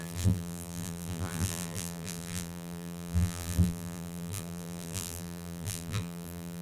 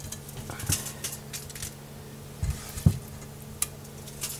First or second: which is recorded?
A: second